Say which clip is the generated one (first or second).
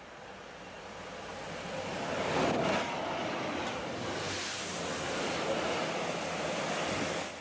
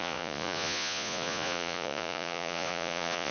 second